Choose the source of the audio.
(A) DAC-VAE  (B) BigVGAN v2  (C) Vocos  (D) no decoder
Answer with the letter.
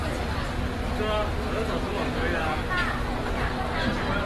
D